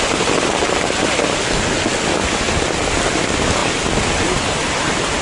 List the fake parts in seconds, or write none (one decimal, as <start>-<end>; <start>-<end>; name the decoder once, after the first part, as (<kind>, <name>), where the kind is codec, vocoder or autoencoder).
none